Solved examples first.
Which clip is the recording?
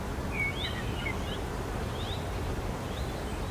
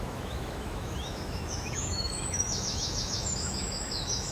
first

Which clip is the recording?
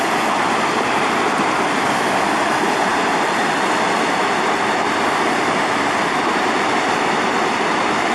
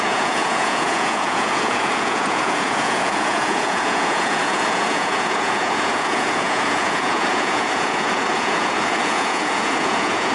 first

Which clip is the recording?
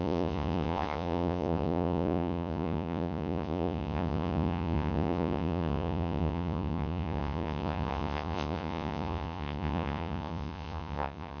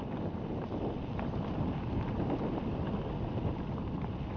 second